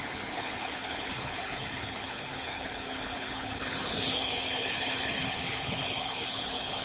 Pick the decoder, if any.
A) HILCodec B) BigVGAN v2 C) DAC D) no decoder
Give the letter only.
A